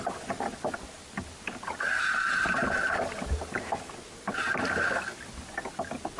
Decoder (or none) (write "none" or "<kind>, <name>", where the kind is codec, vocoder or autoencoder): none